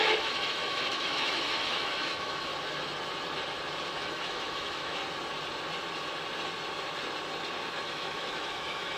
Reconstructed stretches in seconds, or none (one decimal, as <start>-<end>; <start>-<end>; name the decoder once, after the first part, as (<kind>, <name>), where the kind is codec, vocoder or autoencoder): 0.0-2.5 (autoencoder, DAC-VAE); 3.9-5.0; 7.8-9.0